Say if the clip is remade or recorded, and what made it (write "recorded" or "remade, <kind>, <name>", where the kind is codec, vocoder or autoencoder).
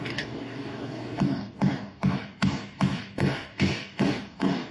remade, codec, DAC